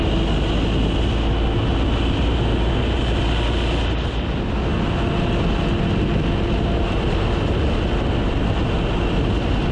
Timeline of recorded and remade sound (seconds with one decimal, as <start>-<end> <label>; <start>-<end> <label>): 0.0-9.7 recorded

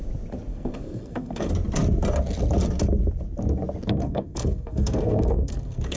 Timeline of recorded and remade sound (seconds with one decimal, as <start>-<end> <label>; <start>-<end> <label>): 0.0-0.5 recorded; 0.5-1.5 remade; 1.5-4.0 recorded; 4.0-6.0 remade

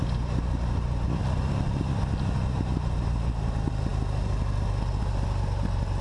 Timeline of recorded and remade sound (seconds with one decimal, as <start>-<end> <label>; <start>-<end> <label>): 0.0-6.0 recorded

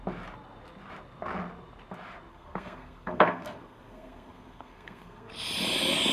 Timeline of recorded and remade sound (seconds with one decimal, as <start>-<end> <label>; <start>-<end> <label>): 0.0-2.3 recorded; 2.3-5.3 remade; 5.3-6.1 recorded